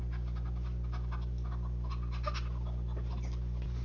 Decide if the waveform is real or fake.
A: real